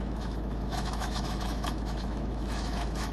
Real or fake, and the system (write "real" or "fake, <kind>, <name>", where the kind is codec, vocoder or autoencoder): fake, autoencoder, DAC-VAE